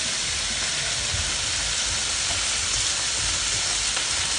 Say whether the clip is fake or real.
real